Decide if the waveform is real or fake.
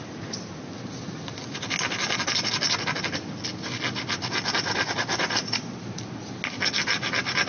real